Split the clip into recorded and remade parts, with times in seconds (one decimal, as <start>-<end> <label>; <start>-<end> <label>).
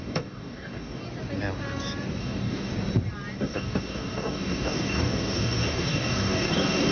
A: 0.0-1.0 remade; 1.0-2.2 recorded; 2.2-2.7 remade; 2.7-3.4 recorded; 3.4-6.9 remade